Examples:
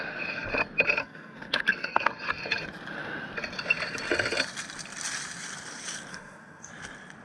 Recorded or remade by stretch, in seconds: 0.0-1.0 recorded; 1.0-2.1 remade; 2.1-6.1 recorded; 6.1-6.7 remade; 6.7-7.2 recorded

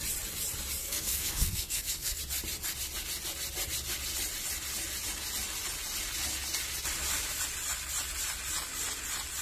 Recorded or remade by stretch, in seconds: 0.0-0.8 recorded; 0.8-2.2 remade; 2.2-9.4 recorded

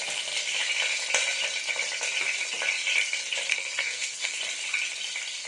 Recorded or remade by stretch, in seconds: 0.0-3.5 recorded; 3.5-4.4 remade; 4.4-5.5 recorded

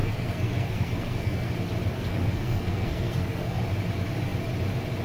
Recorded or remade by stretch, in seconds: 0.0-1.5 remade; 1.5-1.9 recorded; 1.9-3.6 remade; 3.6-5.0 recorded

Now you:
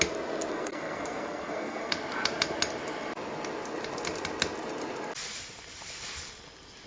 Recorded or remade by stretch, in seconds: 0.0-0.5 recorded; 0.5-1.9 remade; 1.9-6.9 recorded

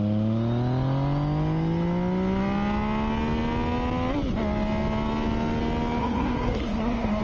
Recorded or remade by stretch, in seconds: 0.0-6.0 recorded; 6.0-7.2 remade